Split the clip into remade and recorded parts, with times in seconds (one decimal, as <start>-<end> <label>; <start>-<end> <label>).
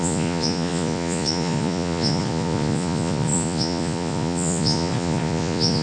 0.0-5.8 remade